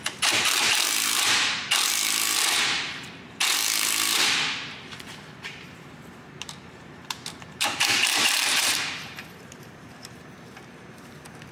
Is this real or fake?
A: fake